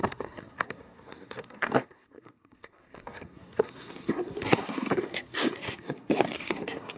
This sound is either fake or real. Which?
fake